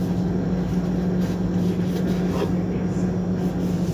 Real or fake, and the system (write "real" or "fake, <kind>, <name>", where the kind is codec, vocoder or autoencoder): real